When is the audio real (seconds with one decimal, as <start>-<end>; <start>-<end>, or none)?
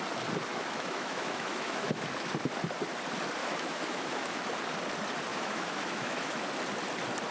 0.0-0.5; 2.3-3.4; 4.4-5.3; 6.4-7.3